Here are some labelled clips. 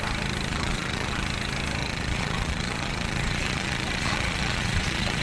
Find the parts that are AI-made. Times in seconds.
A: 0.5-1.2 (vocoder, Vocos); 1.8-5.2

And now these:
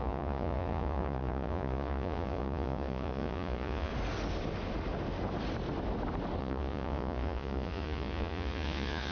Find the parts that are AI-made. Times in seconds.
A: 0.0-3.9 (vocoder, Vocos); 6.4-9.1